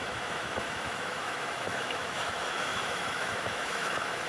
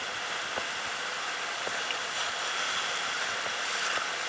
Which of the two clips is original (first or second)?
second